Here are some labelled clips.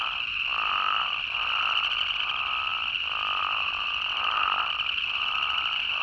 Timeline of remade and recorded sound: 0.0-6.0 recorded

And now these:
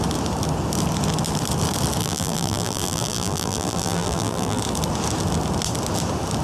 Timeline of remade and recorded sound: 0.0-2.0 recorded; 2.0-4.6 remade; 4.6-6.4 recorded

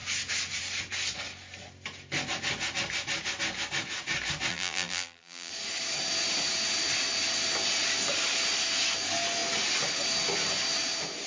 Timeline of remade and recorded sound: 0.0-4.5 recorded; 4.5-5.5 remade; 5.5-11.3 recorded

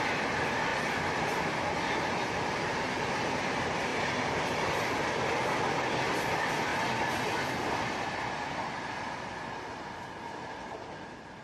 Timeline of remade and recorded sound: 0.0-0.7 remade; 0.7-3.0 recorded; 3.0-3.9 remade; 3.9-4.4 recorded; 4.4-6.7 remade; 6.7-7.7 recorded; 7.7-11.4 remade